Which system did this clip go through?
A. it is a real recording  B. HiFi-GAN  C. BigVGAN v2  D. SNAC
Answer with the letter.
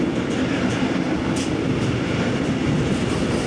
A